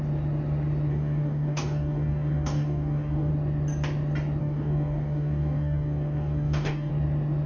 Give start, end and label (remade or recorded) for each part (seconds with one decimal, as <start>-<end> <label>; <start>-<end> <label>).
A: 0.0-0.9 recorded; 0.9-3.3 remade; 3.3-4.4 recorded; 4.4-6.9 remade; 6.9-7.5 recorded